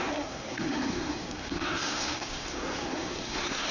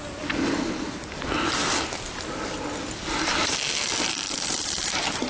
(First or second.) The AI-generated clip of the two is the first